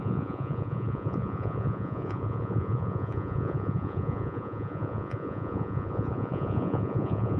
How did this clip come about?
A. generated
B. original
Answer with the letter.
A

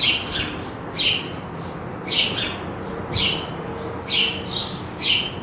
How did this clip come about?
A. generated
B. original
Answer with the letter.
B